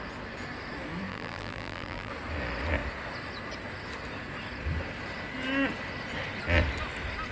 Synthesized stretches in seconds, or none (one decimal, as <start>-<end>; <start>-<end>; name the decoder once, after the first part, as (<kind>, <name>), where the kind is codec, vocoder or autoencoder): 1.1-2.1 (vocoder, BigVGAN v2)